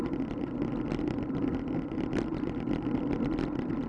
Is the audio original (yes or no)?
no